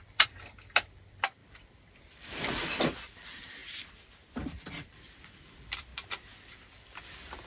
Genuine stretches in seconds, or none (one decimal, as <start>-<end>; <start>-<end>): 3.6-4.6; 5.9-6.5